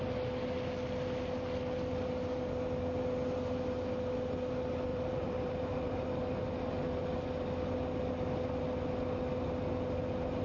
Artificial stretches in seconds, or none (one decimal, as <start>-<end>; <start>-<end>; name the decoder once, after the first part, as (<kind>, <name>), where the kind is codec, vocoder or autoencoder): 4.9-6.5 (vocoder, BigVGAN v2)